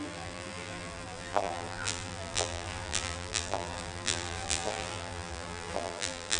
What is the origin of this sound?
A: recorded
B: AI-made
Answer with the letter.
B